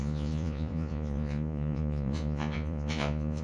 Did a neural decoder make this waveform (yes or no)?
yes